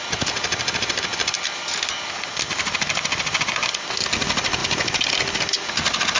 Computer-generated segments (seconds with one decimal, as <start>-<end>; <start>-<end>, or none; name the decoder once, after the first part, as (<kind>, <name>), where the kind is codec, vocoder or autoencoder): none